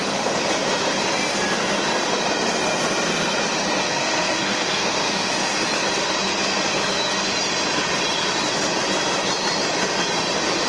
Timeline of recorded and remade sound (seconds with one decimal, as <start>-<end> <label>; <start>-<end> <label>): 0.0-3.8 recorded; 3.8-5.3 remade; 5.3-10.7 recorded